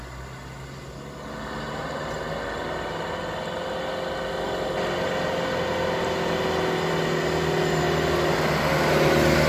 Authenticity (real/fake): real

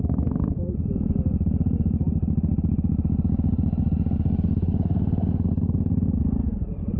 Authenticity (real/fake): real